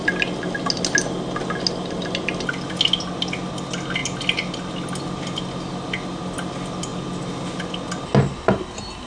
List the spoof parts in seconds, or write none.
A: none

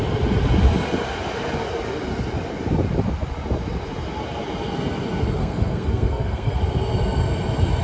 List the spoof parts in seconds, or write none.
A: 5.4-6.6

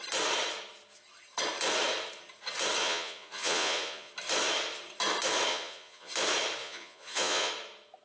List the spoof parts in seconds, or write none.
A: 2.8-4.1; 5.5-6.1; 6.6-7.5

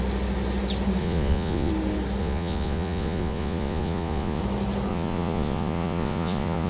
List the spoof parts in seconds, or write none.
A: 1.0-1.7; 2.2-4.4; 4.9-6.7

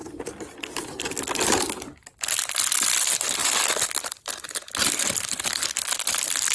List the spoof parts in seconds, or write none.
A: 0.0-1.1; 3.4-4.3

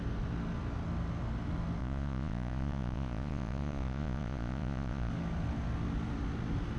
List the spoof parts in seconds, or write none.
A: 1.8-5.1